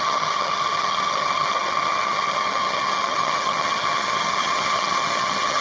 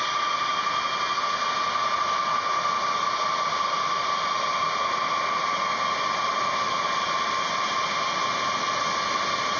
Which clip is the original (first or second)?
second